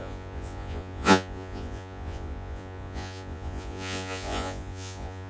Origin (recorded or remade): remade